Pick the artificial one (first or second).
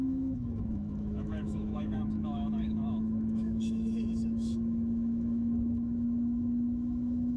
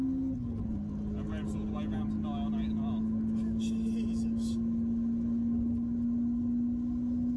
first